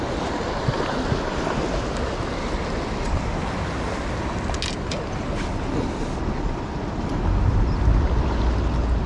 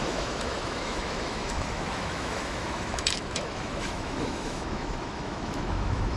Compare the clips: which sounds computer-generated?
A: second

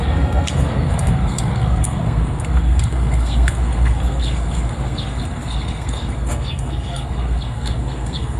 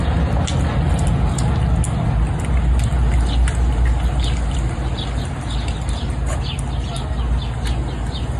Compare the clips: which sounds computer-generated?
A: first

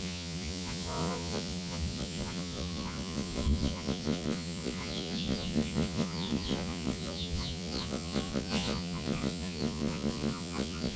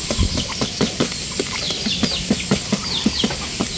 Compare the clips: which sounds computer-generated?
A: first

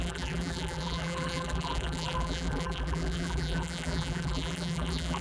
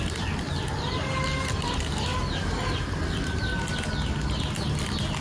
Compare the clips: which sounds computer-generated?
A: first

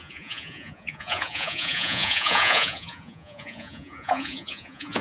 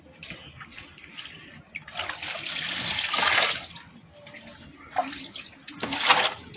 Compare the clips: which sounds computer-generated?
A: first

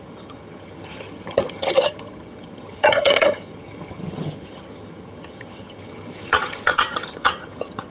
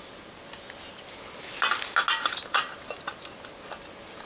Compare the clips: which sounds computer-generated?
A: first